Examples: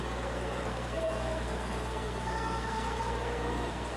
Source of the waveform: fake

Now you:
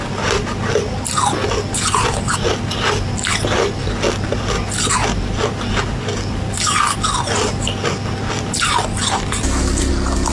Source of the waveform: real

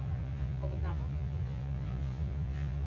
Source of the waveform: fake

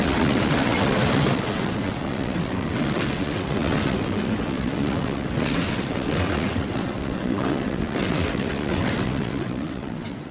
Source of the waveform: fake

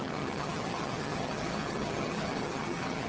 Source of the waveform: fake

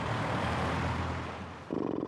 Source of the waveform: real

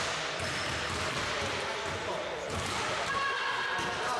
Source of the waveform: real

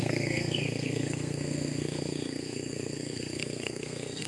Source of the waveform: fake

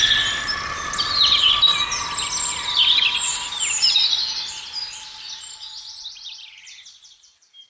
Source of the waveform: real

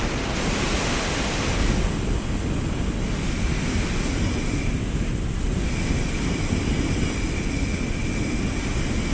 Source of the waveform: real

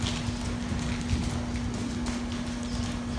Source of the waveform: real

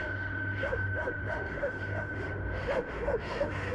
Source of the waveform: fake